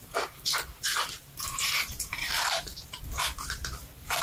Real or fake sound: fake